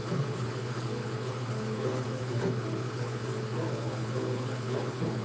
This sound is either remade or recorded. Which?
remade